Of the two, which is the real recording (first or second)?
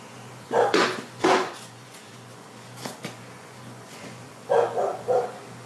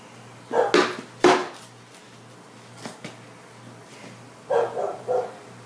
second